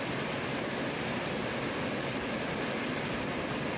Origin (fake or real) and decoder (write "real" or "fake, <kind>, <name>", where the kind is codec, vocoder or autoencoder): real